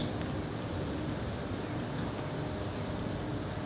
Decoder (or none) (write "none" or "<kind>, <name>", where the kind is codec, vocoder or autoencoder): none